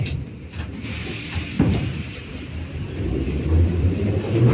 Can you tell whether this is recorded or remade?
remade